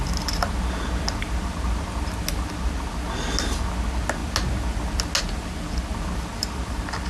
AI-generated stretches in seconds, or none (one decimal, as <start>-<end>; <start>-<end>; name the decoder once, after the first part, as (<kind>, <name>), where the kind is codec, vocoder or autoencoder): none